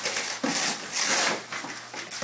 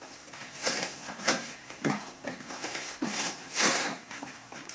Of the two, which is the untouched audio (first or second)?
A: first